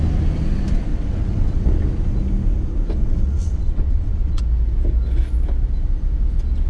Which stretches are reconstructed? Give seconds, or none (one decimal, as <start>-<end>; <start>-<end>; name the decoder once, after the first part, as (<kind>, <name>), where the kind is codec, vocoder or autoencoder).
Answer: 0.9-1.8 (vocoder, WaveNeXt); 3.0-4.4